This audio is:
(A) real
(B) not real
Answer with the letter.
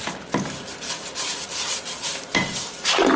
A